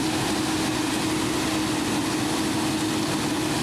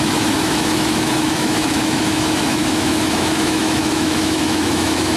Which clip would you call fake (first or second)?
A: second